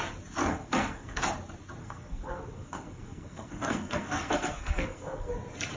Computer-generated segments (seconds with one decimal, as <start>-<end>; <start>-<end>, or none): 0.4-1.2; 1.8-5.3